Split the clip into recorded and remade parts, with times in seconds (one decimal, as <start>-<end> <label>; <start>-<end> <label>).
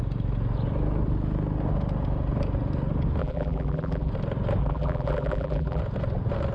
0.0-3.2 recorded; 3.2-4.1 remade; 4.1-4.6 recorded; 4.6-5.8 remade; 5.8-6.5 recorded